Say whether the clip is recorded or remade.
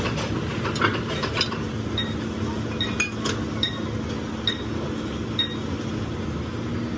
recorded